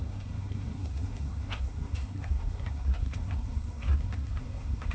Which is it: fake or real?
fake